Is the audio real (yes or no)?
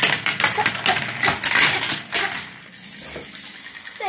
yes